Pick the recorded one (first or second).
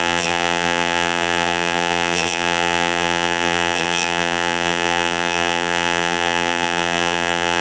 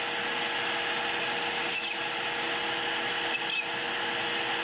second